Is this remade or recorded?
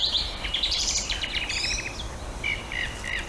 remade